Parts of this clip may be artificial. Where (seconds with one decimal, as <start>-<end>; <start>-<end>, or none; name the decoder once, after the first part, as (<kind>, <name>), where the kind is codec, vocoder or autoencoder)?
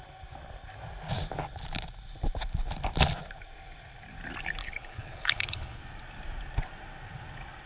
4.6-5.8 (codec, HILCodec)